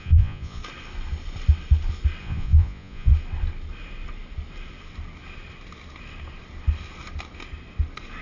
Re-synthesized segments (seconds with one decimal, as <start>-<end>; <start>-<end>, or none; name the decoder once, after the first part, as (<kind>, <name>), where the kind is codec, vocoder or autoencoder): 0.0-0.6 (vocoder, Vocos); 2.2-3.1